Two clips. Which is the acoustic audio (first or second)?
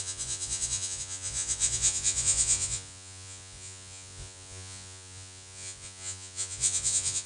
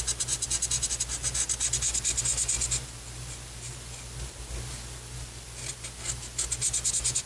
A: second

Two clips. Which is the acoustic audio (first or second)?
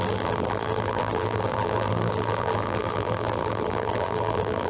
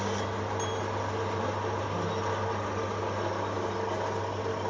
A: second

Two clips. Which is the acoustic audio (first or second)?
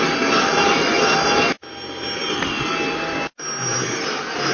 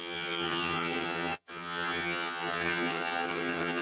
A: first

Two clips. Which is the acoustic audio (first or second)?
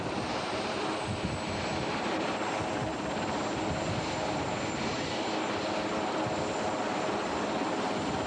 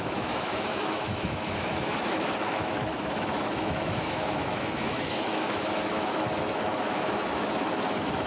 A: first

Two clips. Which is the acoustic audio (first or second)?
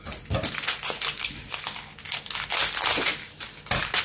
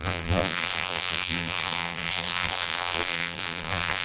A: first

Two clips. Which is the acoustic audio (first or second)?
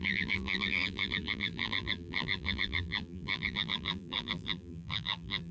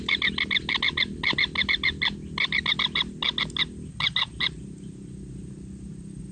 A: second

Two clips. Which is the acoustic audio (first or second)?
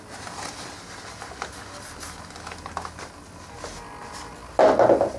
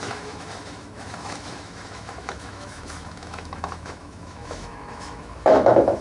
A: first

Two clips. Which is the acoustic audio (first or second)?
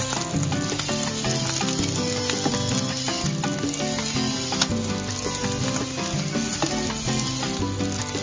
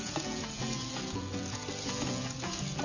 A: first